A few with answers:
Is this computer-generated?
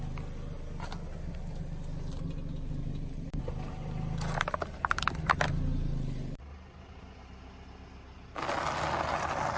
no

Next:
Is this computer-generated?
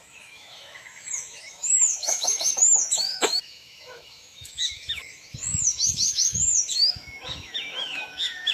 yes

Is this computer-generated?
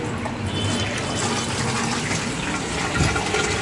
no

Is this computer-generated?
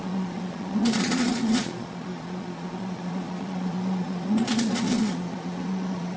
yes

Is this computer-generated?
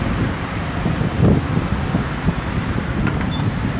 no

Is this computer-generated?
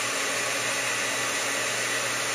no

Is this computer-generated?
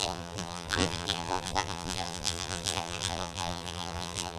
yes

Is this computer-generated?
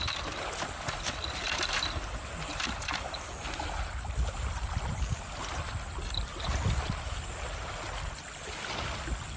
no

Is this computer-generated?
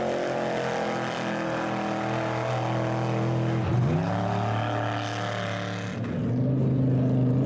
no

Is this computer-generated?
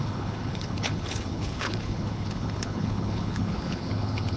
yes